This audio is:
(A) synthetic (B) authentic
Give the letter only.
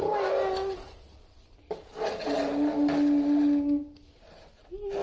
B